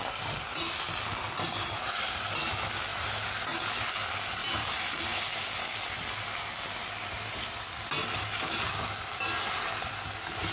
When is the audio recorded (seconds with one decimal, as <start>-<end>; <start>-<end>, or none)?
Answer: 0.0-4.4; 4.9-8.0; 8.7-10.5